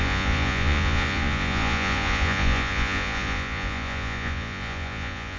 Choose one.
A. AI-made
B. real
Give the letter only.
A